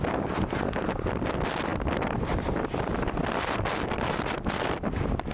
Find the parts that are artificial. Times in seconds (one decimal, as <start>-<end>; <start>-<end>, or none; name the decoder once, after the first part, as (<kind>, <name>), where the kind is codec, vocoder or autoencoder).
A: none